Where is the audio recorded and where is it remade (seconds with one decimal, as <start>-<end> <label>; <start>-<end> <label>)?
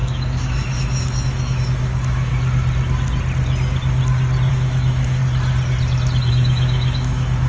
0.0-2.3 remade; 2.3-4.5 recorded; 4.5-5.2 remade; 5.2-6.3 recorded; 6.3-7.5 remade